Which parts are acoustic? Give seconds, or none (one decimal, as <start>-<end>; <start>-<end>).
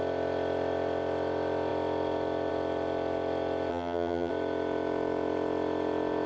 0.0-3.7; 4.3-6.3